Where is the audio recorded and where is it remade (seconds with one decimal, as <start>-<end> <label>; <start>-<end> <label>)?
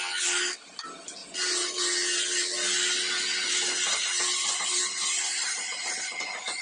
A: 0.0-6.6 recorded